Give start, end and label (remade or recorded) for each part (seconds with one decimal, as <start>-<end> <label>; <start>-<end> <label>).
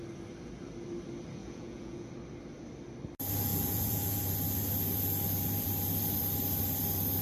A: 0.0-1.4 recorded; 1.4-2.1 remade; 2.1-3.5 recorded; 3.5-4.3 remade; 4.3-7.2 recorded